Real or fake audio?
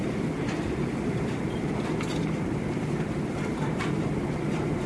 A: real